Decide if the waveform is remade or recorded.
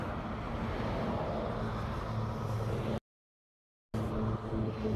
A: recorded